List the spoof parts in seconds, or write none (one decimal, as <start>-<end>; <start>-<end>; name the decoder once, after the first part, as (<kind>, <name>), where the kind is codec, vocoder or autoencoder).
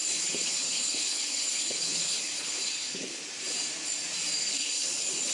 0.0-3.2 (codec, HILCodec); 4.4-5.3